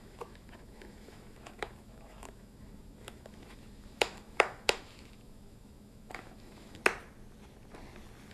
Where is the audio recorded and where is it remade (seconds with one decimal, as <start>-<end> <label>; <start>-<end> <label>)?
0.0-6.8 remade; 6.8-8.3 recorded